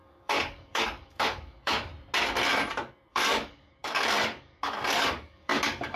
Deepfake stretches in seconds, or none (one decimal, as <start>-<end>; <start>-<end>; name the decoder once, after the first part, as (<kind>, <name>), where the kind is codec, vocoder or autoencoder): 0.0-1.9 (codec, DAC); 3.1-6.0